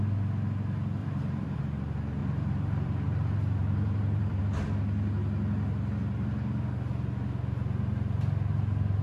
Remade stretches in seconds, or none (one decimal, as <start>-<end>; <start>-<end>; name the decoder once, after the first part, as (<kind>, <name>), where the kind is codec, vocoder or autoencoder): 1.0-1.6 (vocoder, BigVGAN v2); 2.2-4.4

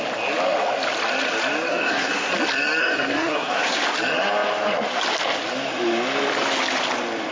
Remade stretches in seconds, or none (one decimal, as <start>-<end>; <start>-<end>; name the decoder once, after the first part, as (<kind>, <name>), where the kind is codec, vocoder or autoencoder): 1.7-2.3 (codec, SNAC); 2.8-3.8